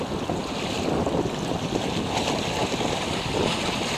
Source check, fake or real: real